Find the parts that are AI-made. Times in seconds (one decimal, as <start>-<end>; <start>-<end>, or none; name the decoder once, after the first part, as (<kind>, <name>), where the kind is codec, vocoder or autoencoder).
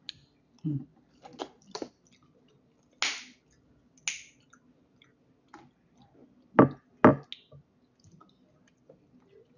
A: none